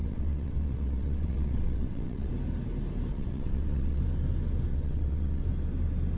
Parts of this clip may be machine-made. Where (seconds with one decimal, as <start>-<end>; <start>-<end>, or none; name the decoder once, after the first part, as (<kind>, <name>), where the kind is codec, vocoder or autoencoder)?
0.0-2.3 (vocoder, WaveNeXt); 3.1-4.0; 4.7-5.4